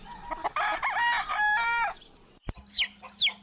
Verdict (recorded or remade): recorded